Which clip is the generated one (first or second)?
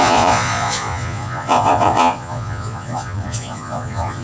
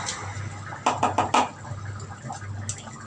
first